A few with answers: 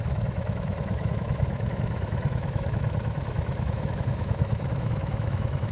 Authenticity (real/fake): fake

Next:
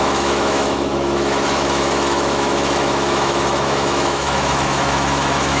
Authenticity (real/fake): fake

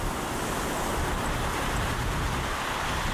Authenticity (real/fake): real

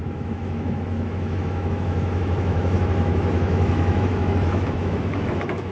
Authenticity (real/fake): fake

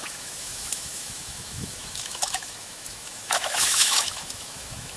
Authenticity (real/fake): fake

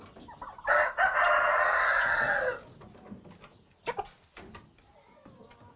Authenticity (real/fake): real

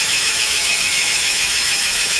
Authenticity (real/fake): fake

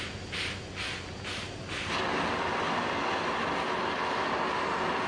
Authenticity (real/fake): real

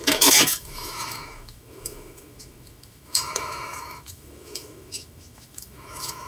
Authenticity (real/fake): fake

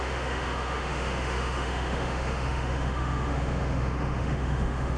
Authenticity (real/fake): fake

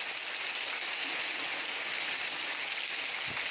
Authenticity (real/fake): real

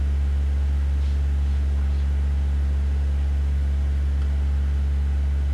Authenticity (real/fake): real